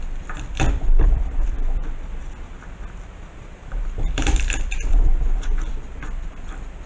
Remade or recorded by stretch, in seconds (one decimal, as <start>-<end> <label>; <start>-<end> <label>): 0.0-1.8 remade; 1.8-3.3 recorded; 3.3-6.9 remade